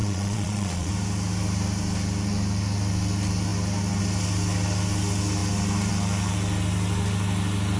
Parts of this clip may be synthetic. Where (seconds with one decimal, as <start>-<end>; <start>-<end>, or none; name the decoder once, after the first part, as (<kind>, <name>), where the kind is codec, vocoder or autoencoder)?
0.0-0.9 (vocoder, Vocos)